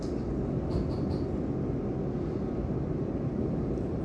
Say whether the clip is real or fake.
real